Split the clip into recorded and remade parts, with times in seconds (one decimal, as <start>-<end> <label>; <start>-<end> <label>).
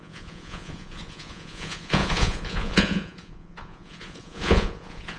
0.0-5.2 remade